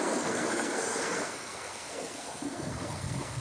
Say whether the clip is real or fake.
fake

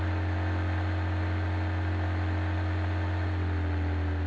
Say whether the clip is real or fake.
real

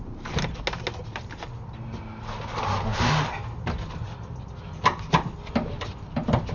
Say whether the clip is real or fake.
real